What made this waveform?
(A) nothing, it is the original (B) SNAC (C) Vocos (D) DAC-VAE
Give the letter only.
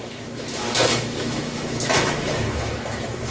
D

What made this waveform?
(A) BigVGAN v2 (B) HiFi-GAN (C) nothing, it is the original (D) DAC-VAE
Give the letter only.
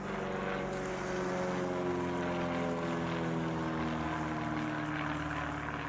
C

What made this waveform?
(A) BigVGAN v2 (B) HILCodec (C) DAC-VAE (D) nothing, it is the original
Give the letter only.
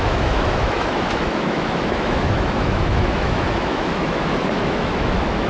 C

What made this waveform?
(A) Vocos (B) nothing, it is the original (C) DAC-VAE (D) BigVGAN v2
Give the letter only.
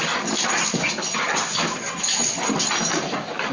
B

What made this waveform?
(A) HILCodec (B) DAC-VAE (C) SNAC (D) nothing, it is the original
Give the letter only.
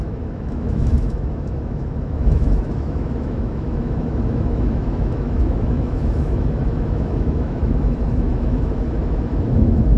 B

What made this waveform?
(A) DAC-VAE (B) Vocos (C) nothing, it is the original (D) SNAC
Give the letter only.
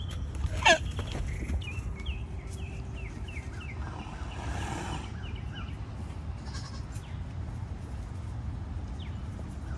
C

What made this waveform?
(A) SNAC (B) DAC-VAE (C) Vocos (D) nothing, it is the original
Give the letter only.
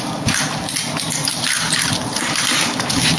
D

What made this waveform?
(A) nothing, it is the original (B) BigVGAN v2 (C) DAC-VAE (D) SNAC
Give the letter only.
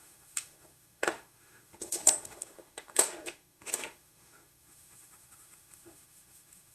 C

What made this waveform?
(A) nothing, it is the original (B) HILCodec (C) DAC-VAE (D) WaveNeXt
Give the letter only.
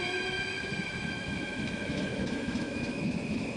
C